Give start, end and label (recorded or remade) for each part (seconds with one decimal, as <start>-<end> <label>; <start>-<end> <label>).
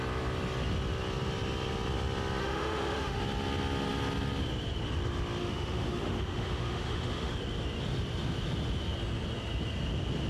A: 0.0-2.4 recorded; 2.4-3.2 remade; 3.2-5.4 recorded; 5.4-7.3 remade; 7.3-10.3 recorded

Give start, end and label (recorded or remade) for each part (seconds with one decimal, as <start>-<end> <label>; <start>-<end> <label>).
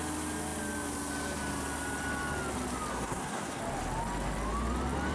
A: 0.0-2.9 recorded; 2.9-3.6 remade; 3.6-5.1 recorded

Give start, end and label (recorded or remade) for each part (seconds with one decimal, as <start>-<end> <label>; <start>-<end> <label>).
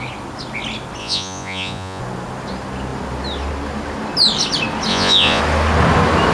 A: 0.0-1.0 recorded; 1.0-2.0 remade; 2.0-4.9 recorded; 4.9-5.4 remade; 5.4-6.3 recorded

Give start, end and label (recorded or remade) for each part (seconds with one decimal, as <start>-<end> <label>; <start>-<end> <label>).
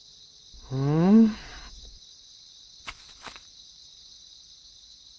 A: 0.0-3.1 recorded; 3.1-5.2 remade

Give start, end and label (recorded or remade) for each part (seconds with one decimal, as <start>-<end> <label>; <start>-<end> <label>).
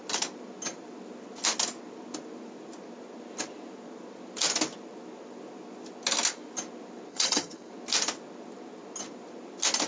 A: 0.0-7.1 recorded; 7.1-7.7 remade; 7.7-9.9 recorded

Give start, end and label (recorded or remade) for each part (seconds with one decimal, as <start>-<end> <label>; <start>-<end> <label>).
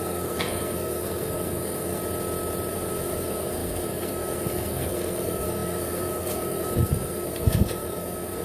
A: 0.0-2.0 remade; 2.0-2.7 recorded; 2.7-8.4 remade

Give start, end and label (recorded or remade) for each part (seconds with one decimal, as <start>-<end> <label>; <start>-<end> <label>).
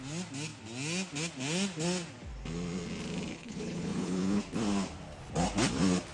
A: 0.0-3.3 recorded; 3.3-4.4 remade; 4.4-6.1 recorded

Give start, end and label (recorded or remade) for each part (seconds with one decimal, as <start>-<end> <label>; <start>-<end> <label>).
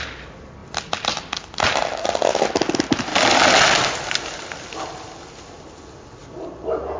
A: 0.0-7.0 recorded